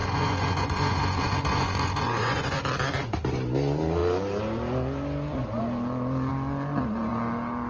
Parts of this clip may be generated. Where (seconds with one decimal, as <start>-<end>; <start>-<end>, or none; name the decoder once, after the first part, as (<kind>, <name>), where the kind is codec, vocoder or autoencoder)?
0.0-2.6 (vocoder, Vocos)